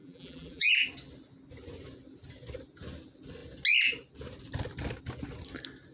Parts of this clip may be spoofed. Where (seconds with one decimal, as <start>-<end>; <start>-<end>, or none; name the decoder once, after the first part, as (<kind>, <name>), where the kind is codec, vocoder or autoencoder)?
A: 0.0-0.7 (vocoder, BigVGAN v2)